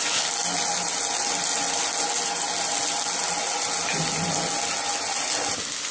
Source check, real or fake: real